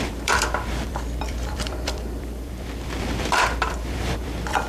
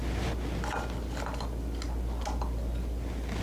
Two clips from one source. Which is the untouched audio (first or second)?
second